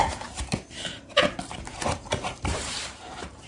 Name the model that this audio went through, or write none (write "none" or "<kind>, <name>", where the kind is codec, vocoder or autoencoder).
vocoder, BigVGAN v2